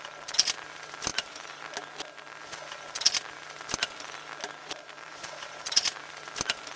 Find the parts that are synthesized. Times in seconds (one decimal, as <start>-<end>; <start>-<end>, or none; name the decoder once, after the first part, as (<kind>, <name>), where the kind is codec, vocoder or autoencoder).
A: 1.1-1.6 (vocoder, BigVGAN v2); 4.6-6.0